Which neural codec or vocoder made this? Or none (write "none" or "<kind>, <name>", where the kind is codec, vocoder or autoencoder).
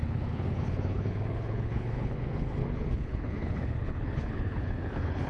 codec, HILCodec